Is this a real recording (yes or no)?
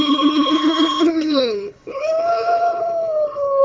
no